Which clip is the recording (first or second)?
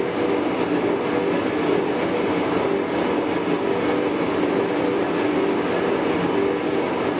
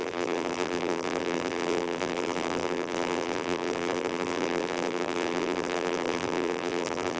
first